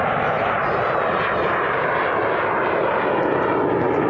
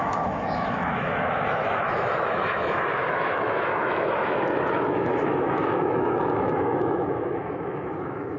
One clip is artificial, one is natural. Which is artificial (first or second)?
second